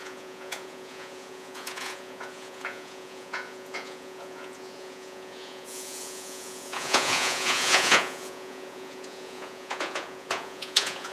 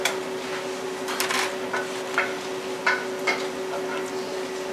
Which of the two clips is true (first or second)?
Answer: second